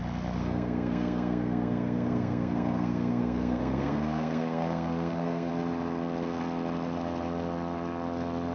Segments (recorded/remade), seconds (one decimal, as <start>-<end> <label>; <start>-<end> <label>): 0.0-0.4 recorded; 0.4-5.5 remade; 5.5-8.5 recorded